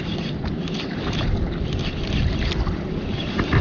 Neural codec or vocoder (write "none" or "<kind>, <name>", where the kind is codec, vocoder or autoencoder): none